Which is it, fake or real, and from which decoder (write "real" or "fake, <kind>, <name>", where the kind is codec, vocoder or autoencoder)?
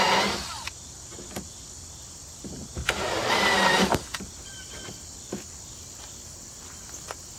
real